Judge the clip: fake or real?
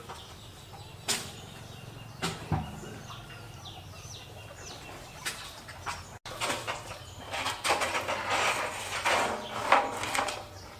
real